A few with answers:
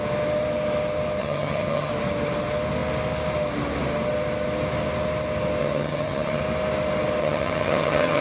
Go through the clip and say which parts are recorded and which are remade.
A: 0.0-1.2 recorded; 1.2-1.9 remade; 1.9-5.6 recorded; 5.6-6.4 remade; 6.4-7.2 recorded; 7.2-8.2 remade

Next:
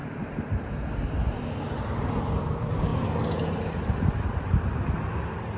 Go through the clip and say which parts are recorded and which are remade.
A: 0.0-5.6 recorded

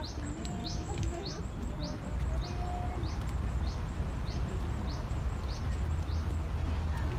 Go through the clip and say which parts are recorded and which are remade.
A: 0.0-0.6 recorded; 0.6-1.4 remade; 1.4-7.2 recorded

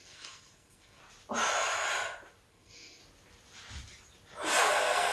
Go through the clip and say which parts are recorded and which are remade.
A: 0.0-1.0 remade; 1.0-2.5 recorded; 2.5-3.0 remade; 3.0-4.6 recorded; 4.6-5.1 remade

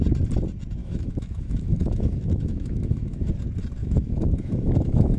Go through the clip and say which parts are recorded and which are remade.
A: 0.0-0.8 recorded; 0.8-3.3 remade; 3.3-3.8 recorded; 3.8-5.2 remade